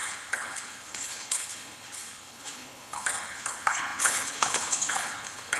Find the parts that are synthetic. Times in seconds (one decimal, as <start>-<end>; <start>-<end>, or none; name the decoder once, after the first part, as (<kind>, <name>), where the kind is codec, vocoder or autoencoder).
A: 0.0-5.6 (codec, HILCodec)